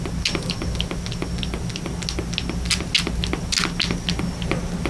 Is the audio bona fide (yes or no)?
yes